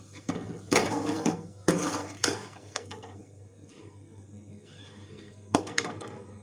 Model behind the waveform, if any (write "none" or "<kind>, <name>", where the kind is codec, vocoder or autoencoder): codec, SNAC